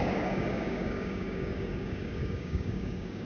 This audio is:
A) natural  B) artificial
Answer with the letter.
B